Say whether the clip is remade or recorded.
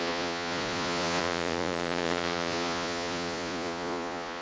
remade